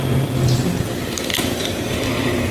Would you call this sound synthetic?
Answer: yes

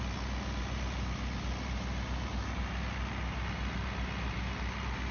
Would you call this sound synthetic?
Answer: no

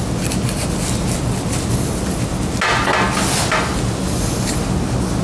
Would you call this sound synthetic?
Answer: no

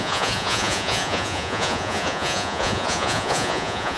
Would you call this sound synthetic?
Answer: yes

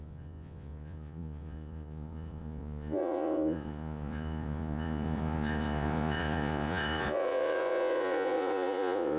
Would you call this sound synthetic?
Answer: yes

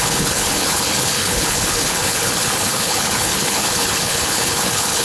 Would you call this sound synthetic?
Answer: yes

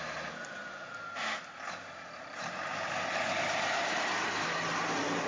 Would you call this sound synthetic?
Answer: no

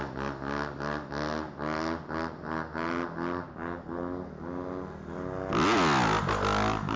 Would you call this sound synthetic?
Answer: no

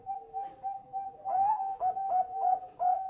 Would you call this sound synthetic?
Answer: yes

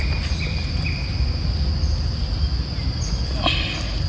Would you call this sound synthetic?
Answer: no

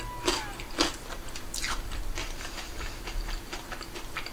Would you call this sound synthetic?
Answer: no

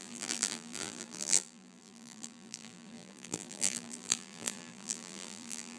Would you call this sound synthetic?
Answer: yes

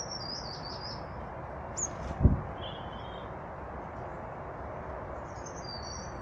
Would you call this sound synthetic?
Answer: no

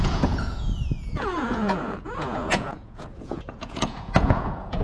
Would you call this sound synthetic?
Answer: yes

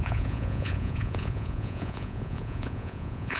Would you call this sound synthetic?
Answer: yes